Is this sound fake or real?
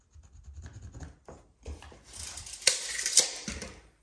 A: fake